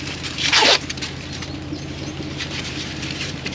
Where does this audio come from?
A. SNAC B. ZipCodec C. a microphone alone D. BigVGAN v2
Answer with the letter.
D